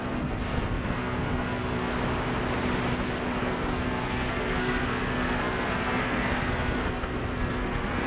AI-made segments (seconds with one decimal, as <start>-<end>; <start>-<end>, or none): 0.0-1.9; 3.4-8.1